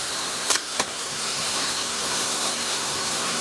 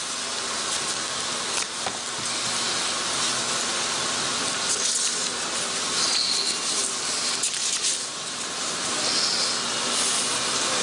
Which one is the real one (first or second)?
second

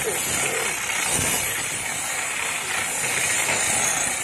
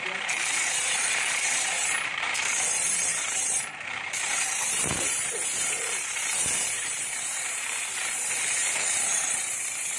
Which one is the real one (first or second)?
first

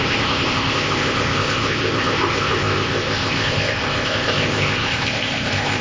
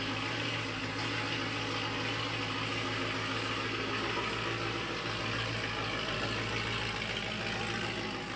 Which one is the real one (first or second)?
second